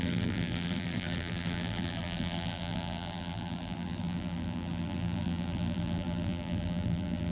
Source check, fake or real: fake